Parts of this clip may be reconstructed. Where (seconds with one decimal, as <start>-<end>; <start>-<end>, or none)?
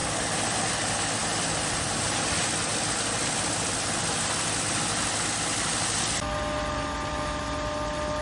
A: none